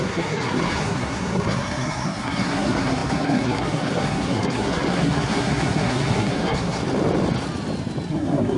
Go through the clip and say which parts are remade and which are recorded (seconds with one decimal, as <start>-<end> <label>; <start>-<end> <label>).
0.0-6.8 remade; 6.8-8.1 recorded; 8.1-8.6 remade